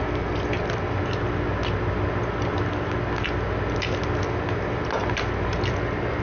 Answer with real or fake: real